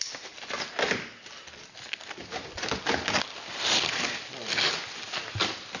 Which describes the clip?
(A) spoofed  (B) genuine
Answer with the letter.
B